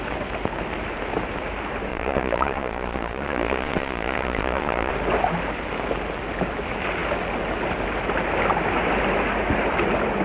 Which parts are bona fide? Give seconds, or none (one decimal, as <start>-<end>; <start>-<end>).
0.0-1.9; 4.9-10.2